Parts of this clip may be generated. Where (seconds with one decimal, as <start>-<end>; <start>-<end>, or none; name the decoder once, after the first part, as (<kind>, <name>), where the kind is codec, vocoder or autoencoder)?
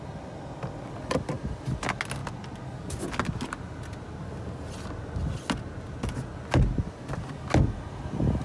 none